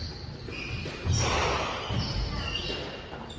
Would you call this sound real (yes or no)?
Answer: yes